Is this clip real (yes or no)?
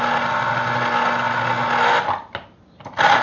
yes